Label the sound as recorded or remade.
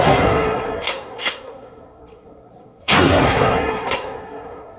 remade